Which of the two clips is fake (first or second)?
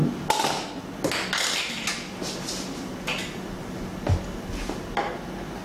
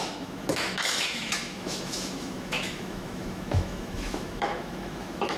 second